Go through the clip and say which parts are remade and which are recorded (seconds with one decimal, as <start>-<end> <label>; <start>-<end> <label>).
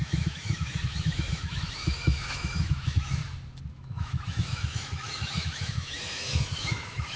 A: 0.0-3.2 remade; 3.2-3.7 recorded; 3.7-7.2 remade